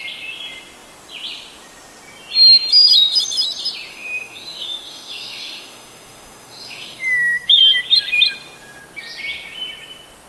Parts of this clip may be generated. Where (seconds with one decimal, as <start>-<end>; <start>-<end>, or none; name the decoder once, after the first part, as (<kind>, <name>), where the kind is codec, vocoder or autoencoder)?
3.9-7.6 (autoencoder, DAC-VAE)